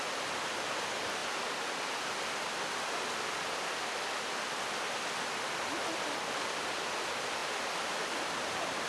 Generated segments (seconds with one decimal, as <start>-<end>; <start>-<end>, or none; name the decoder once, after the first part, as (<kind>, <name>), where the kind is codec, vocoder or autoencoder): none